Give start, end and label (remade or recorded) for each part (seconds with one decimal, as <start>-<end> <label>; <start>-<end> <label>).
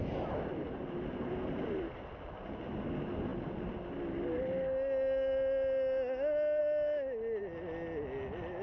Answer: 0.0-8.6 recorded